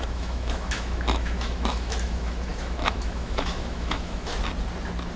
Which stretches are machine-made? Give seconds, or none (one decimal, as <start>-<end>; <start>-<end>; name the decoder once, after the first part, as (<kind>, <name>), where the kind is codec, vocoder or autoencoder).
0.0-4.3 (autoencoder, DAC-VAE)